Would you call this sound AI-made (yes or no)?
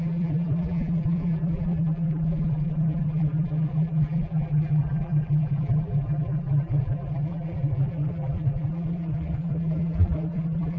yes